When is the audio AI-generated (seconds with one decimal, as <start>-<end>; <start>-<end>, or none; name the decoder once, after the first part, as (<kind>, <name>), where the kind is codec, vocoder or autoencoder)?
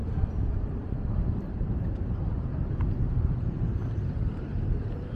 0.5-5.1 (vocoder, BigVGAN v2)